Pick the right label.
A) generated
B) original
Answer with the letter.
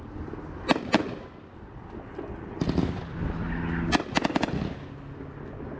B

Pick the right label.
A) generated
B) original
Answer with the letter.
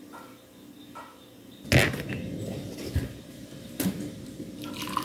B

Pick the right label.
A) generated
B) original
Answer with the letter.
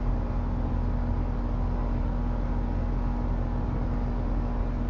B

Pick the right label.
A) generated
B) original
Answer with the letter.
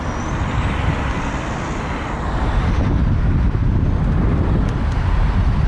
B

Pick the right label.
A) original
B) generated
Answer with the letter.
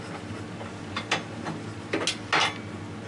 A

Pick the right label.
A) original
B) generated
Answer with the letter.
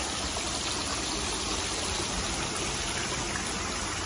A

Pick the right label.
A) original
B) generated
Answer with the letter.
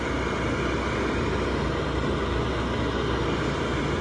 A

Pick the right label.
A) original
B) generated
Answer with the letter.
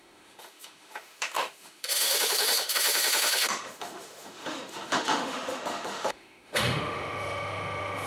B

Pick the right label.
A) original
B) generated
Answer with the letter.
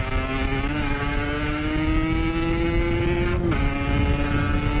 A